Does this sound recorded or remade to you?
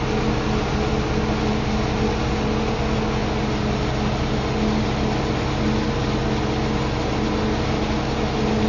recorded